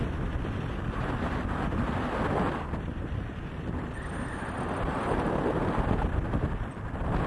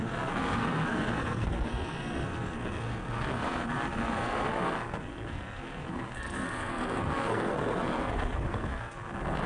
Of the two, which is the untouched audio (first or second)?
first